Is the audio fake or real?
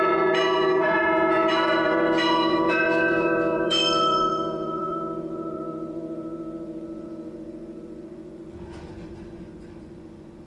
fake